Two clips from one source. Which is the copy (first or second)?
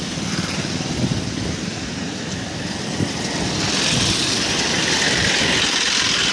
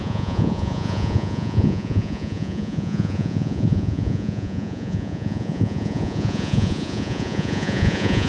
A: second